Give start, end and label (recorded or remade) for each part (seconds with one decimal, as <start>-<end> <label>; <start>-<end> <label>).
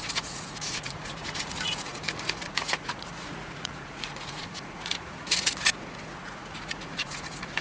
0.0-7.6 remade